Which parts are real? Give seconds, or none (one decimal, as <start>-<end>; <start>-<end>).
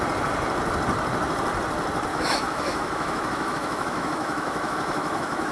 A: 0.0-2.1